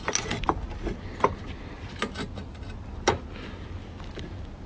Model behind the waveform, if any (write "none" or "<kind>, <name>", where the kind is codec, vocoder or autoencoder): none